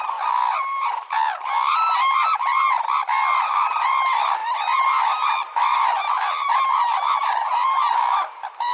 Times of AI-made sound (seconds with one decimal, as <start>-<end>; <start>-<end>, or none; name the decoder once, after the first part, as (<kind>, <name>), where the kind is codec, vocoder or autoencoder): 0.0-8.7 (vocoder, BigVGAN v2)